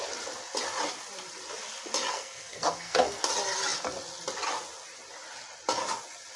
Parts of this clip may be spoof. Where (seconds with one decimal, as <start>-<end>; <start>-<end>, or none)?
2.1-3.2